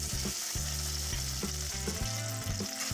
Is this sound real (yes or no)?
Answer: yes